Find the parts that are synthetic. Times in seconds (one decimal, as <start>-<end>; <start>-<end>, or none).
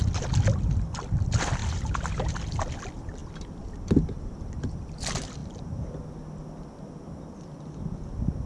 0.7-3.2; 4.4-5.4; 8.1-8.5